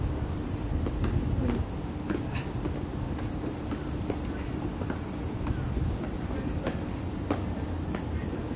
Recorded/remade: recorded